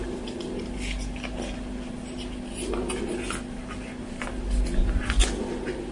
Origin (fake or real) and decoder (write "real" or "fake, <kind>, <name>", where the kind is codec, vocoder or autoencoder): real